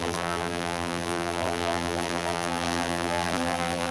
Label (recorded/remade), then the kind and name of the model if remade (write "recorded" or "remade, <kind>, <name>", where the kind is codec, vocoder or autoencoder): remade, vocoder, BigVGAN v2